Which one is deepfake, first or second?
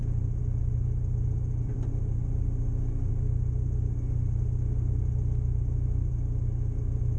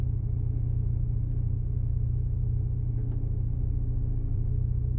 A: first